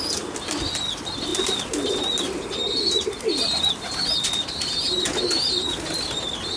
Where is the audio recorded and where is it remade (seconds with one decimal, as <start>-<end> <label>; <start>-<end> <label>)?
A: 0.0-6.6 recorded